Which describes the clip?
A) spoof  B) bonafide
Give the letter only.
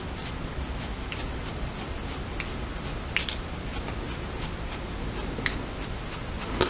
B